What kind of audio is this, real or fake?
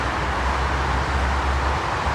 real